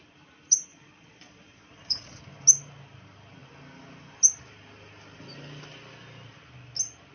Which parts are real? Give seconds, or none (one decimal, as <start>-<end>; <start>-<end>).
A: 0.0-0.7; 2.2-7.1